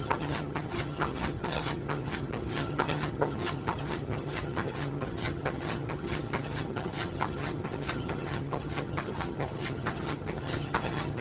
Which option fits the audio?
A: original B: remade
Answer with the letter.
B